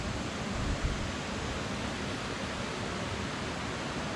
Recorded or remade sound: recorded